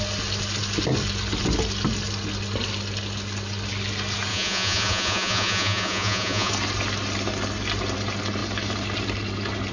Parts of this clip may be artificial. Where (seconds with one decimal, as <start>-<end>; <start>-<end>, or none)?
4.3-6.5